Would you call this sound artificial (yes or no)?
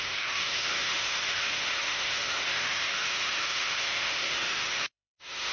yes